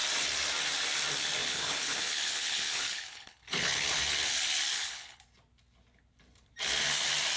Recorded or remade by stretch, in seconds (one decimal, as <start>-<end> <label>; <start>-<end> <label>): 0.0-1.4 recorded; 1.4-4.0 remade; 4.0-4.7 recorded; 4.7-5.2 remade; 5.2-7.4 recorded